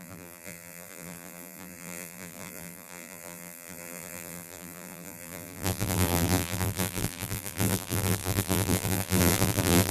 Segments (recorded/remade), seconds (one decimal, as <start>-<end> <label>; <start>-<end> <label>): 0.0-9.9 remade